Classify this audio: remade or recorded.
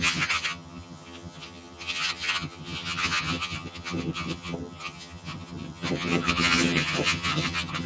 remade